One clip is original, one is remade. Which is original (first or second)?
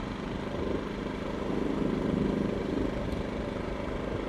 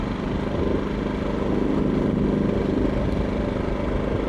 second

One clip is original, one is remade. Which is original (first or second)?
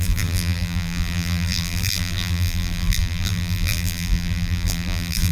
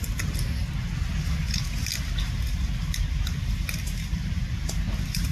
second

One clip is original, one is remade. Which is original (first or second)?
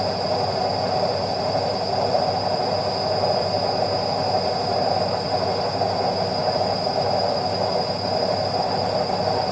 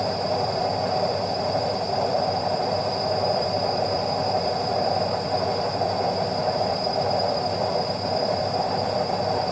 first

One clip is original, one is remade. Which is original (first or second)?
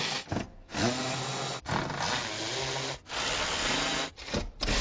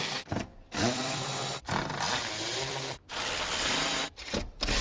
first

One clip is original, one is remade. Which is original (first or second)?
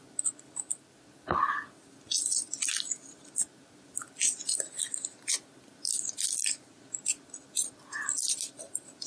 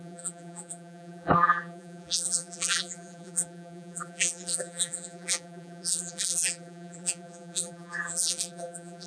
first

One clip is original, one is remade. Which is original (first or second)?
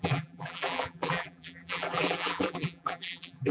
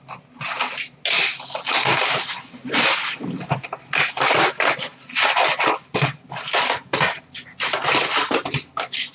second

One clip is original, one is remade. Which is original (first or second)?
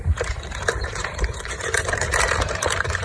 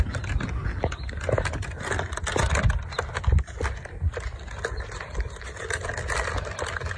second